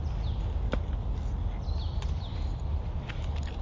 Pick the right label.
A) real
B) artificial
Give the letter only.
A